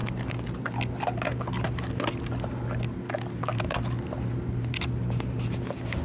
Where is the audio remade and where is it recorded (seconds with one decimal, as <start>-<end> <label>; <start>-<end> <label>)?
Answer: 0.0-6.0 recorded